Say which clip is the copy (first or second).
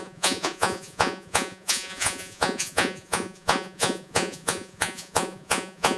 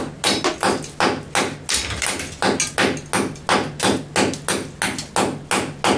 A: first